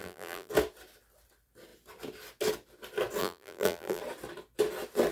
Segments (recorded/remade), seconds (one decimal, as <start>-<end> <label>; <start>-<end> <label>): 0.0-0.5 remade; 0.5-3.2 recorded; 3.2-4.0 remade; 4.0-5.1 recorded